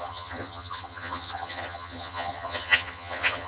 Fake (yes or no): yes